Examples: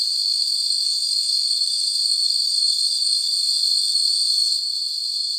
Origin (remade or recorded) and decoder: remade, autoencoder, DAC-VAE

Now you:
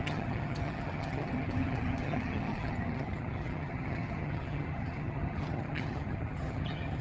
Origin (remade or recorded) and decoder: remade, vocoder, HiFi-GAN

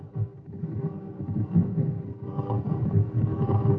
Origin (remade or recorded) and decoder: remade, codec, SNAC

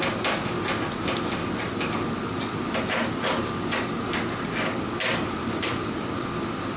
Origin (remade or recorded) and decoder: recorded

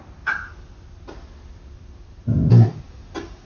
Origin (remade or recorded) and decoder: recorded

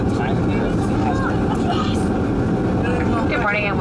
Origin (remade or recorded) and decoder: recorded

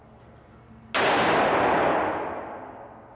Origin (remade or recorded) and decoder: recorded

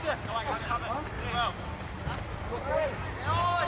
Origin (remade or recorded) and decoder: recorded